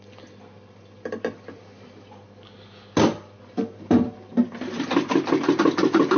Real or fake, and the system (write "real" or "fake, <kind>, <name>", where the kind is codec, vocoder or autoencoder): real